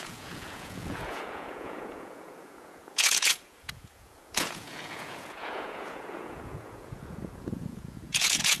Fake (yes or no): yes